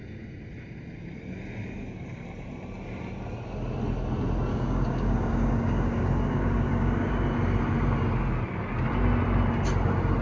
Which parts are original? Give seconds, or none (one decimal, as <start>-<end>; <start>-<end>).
0.0-4.5; 7.1-10.2